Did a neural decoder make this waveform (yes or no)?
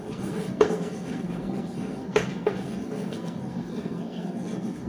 yes